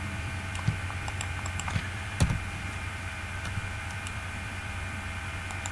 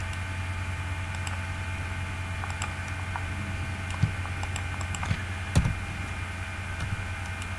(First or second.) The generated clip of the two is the first